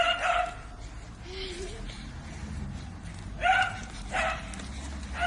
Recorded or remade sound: recorded